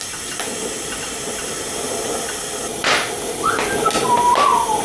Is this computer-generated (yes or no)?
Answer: no